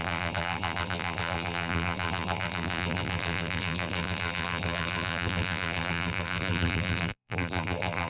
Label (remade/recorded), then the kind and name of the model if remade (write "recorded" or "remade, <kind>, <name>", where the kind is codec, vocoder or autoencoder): remade, vocoder, BigVGAN v2